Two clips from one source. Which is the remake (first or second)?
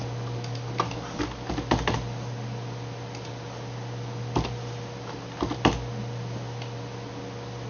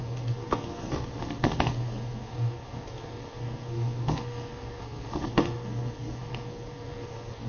second